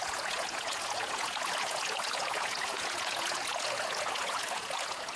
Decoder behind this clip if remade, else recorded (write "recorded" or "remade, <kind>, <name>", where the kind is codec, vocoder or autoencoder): remade, vocoder, Vocos